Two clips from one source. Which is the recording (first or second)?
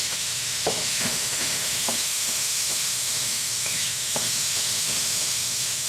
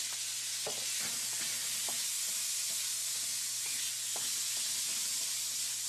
second